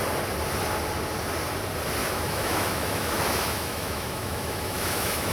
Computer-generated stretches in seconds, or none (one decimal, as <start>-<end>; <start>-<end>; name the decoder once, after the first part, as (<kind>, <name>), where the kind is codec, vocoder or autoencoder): 2.0-5.3 (autoencoder, DAC-VAE)